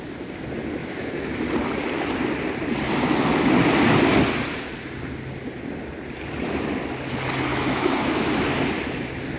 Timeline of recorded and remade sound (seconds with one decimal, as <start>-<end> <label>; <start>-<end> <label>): 0.0-0.8 recorded; 0.8-1.3 remade; 1.3-7.5 recorded; 7.5-8.2 remade; 8.2-9.4 recorded